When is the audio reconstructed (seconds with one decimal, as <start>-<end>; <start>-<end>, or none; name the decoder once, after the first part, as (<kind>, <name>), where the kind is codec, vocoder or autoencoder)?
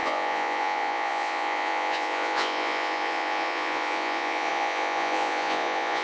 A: 0.0-6.0 (vocoder, Vocos)